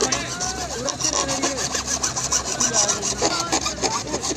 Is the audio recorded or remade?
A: recorded